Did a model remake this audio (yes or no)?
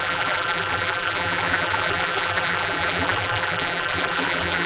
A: yes